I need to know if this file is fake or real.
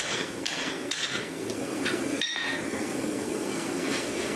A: fake